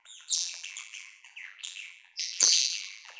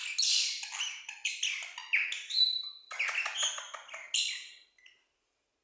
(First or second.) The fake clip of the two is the first